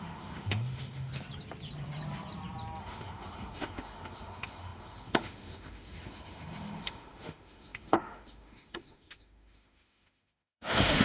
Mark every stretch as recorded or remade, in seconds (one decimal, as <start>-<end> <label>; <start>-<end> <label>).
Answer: 0.0-1.1 remade; 1.1-2.8 recorded; 2.8-11.0 remade